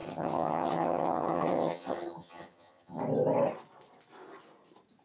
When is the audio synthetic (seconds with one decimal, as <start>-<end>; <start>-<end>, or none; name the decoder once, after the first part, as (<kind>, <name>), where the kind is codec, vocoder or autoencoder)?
0.0-3.0 (vocoder, HiFi-GAN)